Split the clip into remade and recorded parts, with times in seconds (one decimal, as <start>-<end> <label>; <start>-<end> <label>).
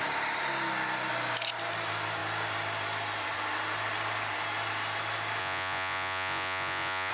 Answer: 0.0-5.4 recorded; 5.4-7.1 remade